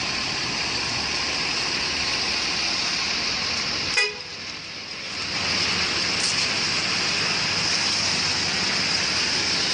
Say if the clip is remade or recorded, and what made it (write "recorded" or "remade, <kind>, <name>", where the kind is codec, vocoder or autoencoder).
recorded